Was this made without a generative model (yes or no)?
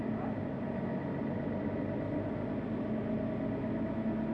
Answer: yes